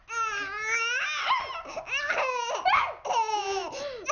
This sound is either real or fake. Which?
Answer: real